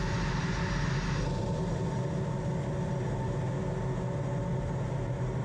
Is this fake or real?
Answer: real